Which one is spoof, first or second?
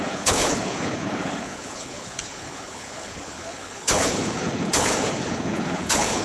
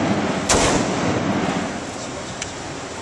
first